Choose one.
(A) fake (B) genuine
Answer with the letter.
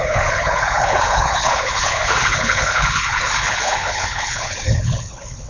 A